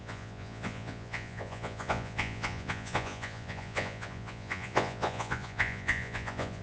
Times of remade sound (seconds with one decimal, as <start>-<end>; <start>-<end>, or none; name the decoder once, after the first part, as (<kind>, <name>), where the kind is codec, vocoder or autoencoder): 0.0-6.6 (vocoder, Vocos)